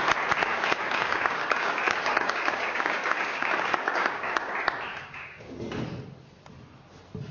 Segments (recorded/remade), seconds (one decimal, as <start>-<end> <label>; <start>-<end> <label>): 0.0-0.5 recorded; 0.5-4.5 remade; 4.5-4.9 recorded; 4.9-5.5 remade; 5.5-7.3 recorded